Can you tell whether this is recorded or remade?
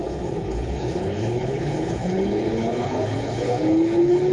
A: remade